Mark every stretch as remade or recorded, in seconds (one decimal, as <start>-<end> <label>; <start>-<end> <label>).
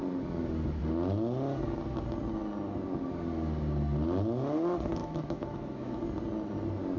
0.0-5.0 recorded; 5.0-6.0 remade; 6.0-7.0 recorded